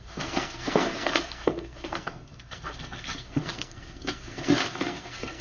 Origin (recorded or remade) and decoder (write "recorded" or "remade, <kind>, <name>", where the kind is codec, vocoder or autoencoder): remade, codec, SNAC